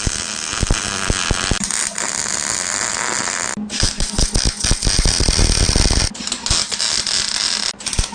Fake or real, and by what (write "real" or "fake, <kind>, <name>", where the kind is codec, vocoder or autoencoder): real